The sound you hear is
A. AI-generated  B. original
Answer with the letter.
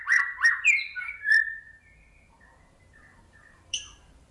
A